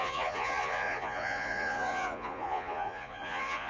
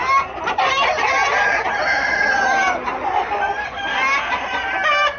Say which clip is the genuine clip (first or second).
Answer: second